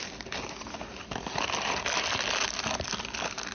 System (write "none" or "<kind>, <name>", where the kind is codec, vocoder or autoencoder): none